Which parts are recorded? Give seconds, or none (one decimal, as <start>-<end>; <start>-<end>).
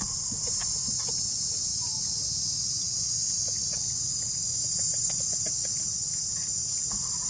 0.0-7.3